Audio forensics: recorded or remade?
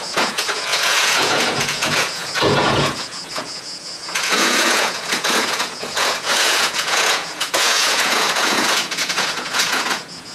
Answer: remade